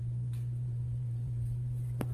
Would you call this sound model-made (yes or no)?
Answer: yes